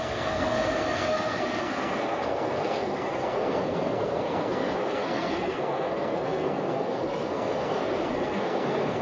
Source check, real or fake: fake